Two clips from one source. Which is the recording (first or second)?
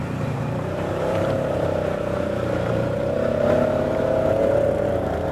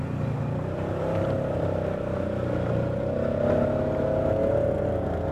second